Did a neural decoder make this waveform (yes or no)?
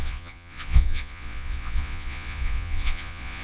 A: yes